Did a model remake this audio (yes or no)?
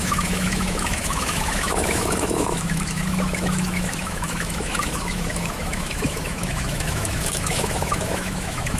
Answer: yes